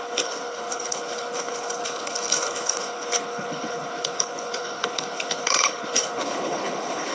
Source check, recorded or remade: remade